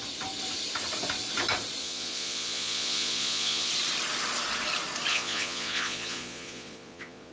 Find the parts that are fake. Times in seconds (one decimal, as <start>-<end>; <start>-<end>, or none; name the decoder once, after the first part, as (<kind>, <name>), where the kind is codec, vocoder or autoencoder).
1.8-3.7 (vocoder, Vocos); 5.1-7.3